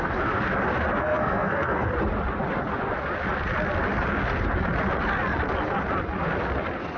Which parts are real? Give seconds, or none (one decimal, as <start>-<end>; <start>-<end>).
0.0-1.0; 1.9-7.0